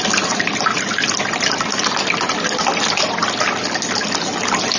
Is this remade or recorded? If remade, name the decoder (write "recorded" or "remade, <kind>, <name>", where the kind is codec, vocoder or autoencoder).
recorded